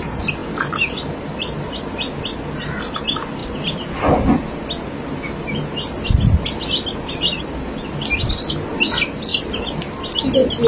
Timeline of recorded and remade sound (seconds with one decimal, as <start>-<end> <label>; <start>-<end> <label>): 0.0-10.7 recorded